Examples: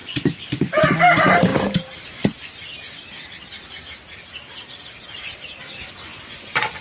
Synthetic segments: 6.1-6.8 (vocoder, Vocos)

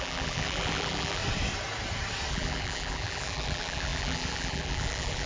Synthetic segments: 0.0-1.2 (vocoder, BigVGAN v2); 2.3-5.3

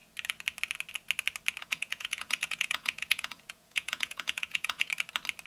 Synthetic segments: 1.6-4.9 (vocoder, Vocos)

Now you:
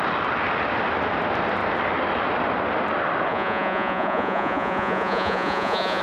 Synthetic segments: 3.3-6.0 (vocoder, Vocos)

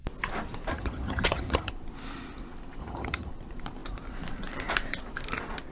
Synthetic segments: 0.7-1.7 (vocoder, HiFi-GAN); 2.8-3.3

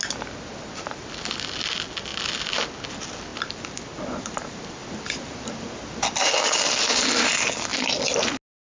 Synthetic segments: 3.3-4.3 (vocoder, BigVGAN v2); 4.8-6.3

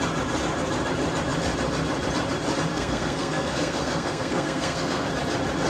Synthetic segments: 2.7-5.1 (codec, SNAC)

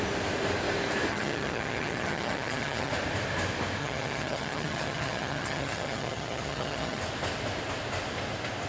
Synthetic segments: 1.1-2.9 (vocoder, HiFi-GAN); 3.8-7.0